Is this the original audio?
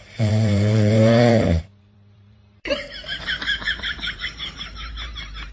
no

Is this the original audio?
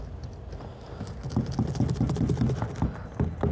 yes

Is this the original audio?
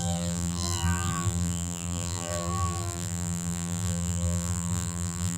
no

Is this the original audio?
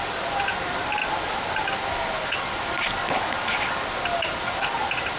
yes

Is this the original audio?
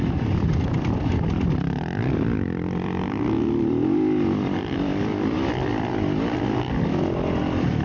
no